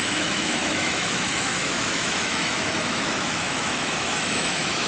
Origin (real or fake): fake